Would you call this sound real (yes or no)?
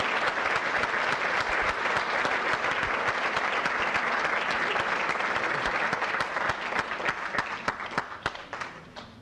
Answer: yes